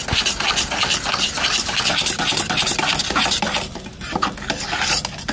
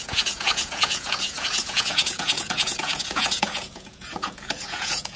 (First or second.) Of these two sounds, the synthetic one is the second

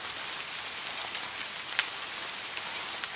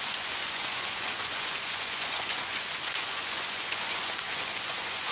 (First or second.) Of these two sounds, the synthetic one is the second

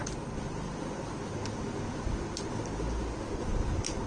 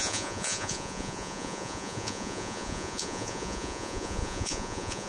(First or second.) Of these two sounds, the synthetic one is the second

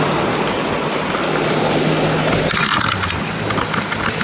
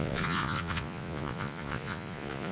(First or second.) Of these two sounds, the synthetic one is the second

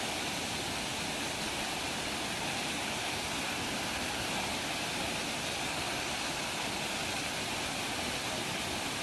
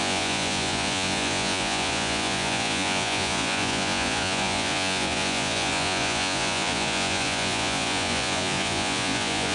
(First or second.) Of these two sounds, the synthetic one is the second